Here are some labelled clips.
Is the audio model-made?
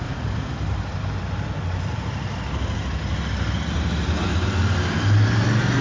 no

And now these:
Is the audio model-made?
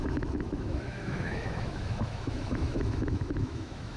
yes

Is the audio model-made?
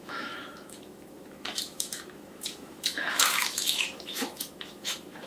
yes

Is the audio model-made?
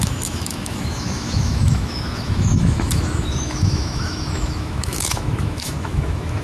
yes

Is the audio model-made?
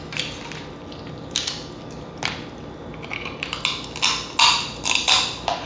no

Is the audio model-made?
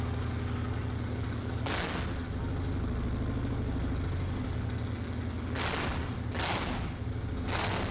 no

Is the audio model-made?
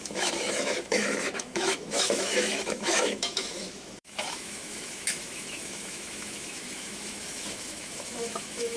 yes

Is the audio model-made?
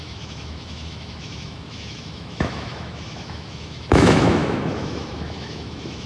yes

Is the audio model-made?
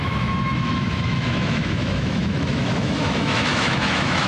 yes